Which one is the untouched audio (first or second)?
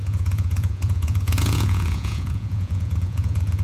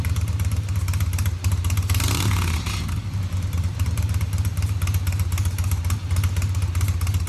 second